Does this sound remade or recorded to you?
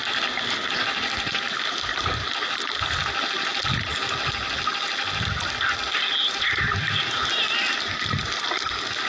recorded